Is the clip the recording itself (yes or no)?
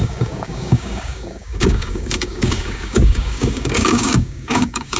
no